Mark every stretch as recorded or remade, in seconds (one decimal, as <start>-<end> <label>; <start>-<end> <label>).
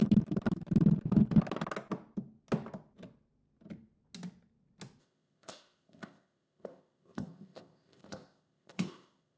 0.0-5.0 recorded; 5.0-9.4 remade